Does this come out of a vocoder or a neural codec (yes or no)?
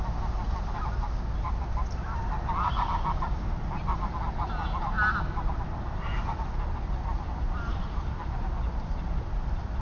no